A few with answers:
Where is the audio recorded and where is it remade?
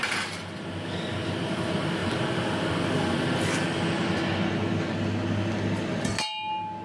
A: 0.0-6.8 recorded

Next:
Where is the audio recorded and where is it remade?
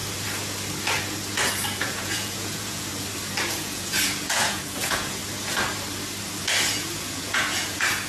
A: 0.0-1.8 recorded; 1.8-2.9 remade; 2.9-3.5 recorded; 3.5-5.2 remade; 5.2-6.7 recorded; 6.7-8.1 remade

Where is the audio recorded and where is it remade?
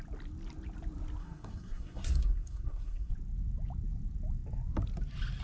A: 0.0-1.2 recorded; 1.2-3.1 remade; 3.1-5.4 recorded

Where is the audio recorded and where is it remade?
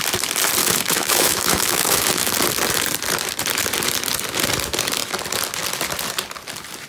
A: 0.0-0.6 recorded; 0.6-2.3 remade; 2.3-6.9 recorded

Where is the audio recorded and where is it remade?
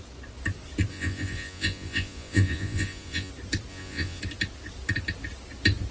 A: 0.0-0.9 recorded; 0.9-3.3 remade; 3.3-3.7 recorded; 3.7-4.2 remade; 4.2-5.9 recorded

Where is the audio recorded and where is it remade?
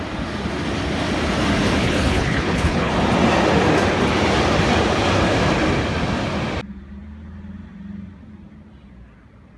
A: 0.0-1.8 recorded; 1.8-2.9 remade; 2.9-9.6 recorded